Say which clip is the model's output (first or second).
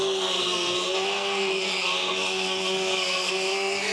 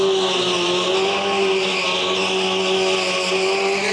first